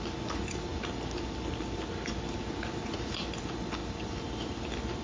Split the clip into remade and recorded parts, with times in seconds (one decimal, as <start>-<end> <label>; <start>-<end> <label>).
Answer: 0.0-5.0 recorded